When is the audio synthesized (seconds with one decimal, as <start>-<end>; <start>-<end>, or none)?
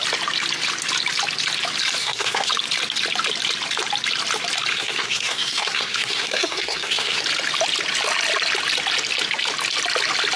2.0-2.5; 4.7-7.2